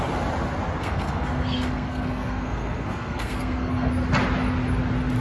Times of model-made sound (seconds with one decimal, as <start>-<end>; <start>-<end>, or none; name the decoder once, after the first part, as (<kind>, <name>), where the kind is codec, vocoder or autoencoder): 0.8-3.9 (codec, SNAC)